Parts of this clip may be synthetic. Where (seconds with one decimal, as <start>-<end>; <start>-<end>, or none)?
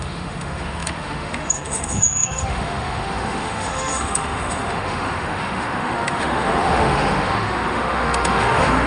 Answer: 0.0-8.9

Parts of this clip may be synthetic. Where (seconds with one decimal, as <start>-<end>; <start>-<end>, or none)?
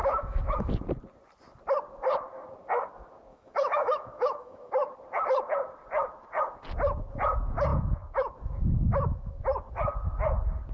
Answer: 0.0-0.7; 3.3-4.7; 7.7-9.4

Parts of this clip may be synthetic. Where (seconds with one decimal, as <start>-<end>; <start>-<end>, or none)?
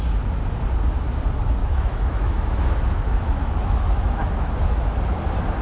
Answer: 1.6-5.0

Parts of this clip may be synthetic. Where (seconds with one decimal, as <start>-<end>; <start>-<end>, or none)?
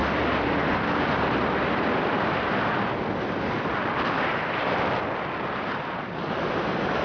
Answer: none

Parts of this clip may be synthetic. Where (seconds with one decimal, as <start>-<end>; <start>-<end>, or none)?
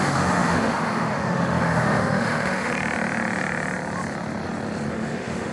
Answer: 0.0-2.7; 4.9-5.5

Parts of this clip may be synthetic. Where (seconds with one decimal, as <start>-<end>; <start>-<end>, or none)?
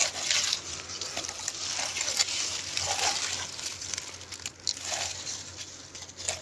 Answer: none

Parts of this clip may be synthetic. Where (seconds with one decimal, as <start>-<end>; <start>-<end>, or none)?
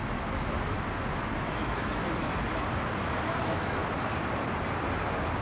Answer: 1.4-2.0; 3.4-3.8